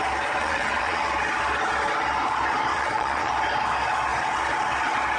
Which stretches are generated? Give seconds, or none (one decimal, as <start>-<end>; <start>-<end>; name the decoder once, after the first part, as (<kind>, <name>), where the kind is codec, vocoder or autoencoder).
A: 0.4-1.0 (vocoder, Vocos); 2.7-3.3